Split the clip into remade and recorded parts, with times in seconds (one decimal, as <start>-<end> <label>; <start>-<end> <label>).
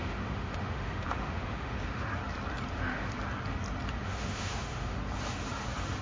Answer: 0.0-2.1 remade; 2.1-2.7 recorded; 2.7-3.1 remade; 3.1-4.0 recorded; 4.0-5.0 remade; 5.0-6.0 recorded